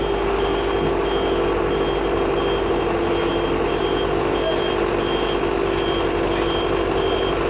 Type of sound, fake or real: real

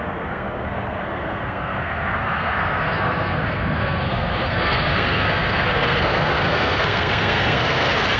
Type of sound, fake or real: fake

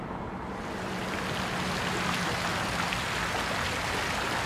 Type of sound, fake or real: real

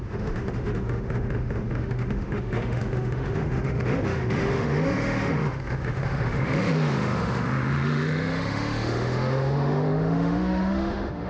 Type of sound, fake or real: fake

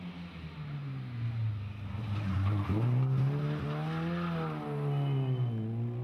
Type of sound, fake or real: real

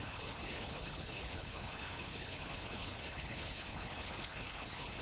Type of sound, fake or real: fake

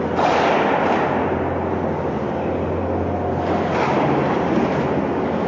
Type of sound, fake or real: real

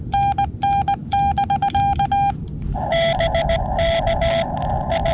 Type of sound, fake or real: real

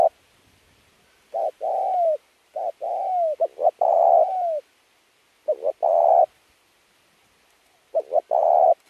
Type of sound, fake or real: real